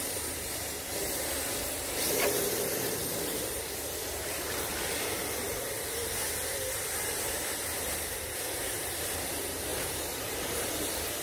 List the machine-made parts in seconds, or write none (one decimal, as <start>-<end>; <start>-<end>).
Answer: 0.0-4.7; 8.6-11.2